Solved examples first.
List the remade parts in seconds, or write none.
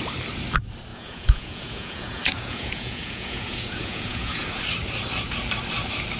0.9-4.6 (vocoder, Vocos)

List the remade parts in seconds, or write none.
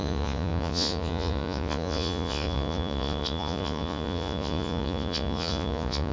0.0-6.1 (vocoder, Vocos)